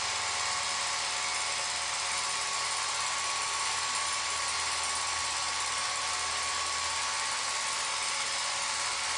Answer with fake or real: real